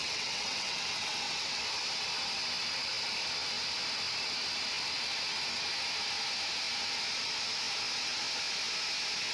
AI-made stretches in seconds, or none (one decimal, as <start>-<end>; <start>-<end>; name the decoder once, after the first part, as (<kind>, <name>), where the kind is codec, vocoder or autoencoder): 0.0-1.6 (vocoder, WaveNeXt)